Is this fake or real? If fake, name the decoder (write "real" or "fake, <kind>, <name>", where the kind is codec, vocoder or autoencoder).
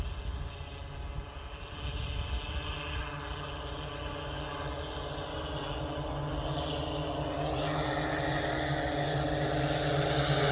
real